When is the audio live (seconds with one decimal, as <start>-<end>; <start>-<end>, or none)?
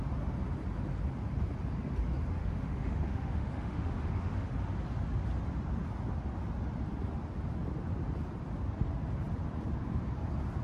0.0-2.4; 4.5-10.6